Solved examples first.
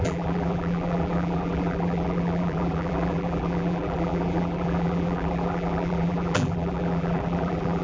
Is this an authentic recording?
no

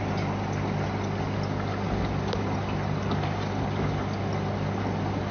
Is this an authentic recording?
yes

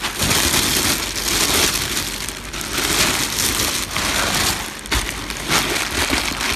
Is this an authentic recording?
yes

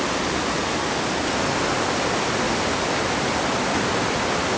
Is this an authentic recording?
yes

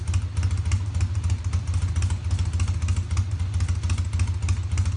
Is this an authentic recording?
yes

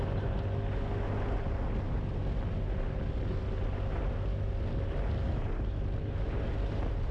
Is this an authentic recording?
yes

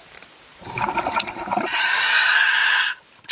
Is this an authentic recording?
no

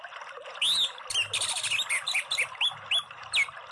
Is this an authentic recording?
yes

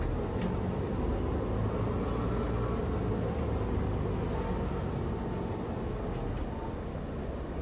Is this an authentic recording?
yes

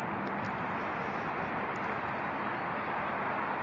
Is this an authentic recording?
yes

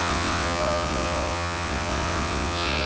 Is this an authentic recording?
no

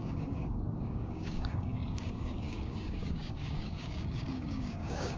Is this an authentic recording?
no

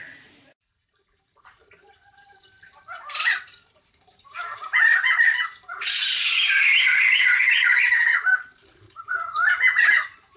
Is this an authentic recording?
no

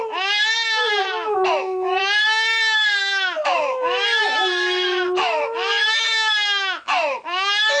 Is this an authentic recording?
no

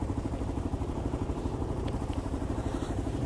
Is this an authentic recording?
no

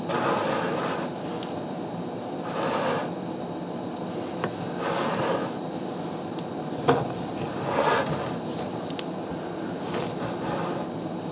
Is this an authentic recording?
yes